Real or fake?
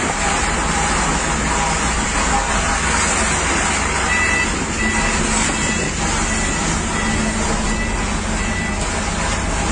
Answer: real